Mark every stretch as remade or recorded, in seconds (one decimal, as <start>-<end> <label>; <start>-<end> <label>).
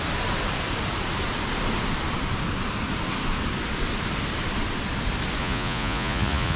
0.0-5.4 recorded; 5.4-6.6 remade